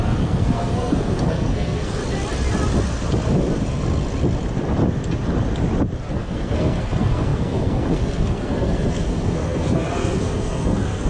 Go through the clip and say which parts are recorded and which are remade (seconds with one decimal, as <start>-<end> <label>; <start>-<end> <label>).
0.0-2.0 remade; 2.0-6.1 recorded; 6.1-11.1 remade